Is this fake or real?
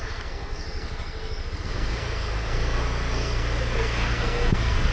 fake